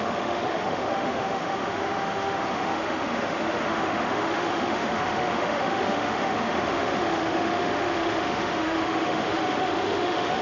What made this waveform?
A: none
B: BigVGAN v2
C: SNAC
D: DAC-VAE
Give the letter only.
D